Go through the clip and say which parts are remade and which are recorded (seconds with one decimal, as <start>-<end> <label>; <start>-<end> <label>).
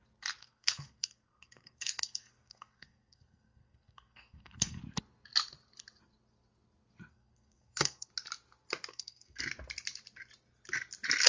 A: 0.0-0.4 recorded; 0.4-4.8 remade; 4.8-7.1 recorded; 7.1-8.1 remade; 8.1-8.9 recorded; 8.9-9.4 remade; 9.4-11.3 recorded